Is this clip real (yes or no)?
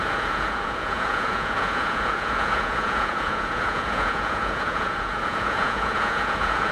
no